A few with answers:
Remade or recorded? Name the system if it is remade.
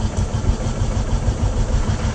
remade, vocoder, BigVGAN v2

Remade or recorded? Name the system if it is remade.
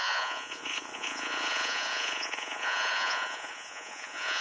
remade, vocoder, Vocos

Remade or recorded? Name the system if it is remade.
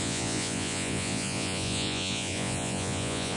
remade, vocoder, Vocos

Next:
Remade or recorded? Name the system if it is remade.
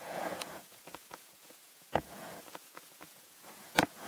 remade, vocoder, Vocos